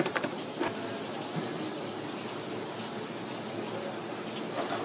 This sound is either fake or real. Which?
real